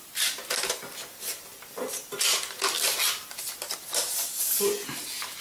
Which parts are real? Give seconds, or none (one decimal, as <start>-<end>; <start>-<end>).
0.0-1.5; 3.9-5.4